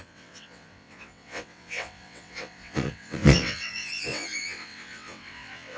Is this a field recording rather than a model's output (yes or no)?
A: no